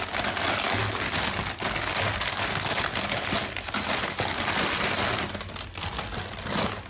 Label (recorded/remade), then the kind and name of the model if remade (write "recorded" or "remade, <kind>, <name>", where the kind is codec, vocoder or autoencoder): recorded